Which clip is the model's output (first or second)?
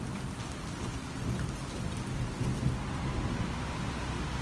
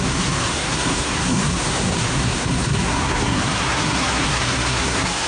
second